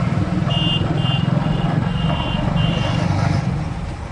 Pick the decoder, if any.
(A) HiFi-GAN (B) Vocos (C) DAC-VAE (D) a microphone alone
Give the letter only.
D